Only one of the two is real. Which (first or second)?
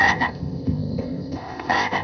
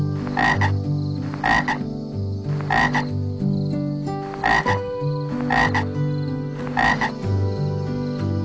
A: second